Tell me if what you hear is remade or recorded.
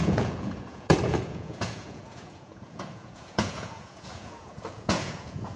remade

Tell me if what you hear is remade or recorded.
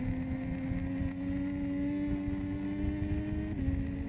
recorded